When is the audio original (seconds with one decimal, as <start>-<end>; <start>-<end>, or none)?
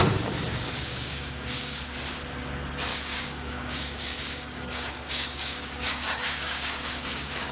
0.0-0.5; 1.8-2.9